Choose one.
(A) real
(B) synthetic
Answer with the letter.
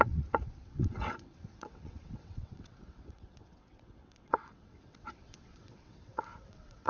B